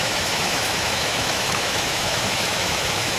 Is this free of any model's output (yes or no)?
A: no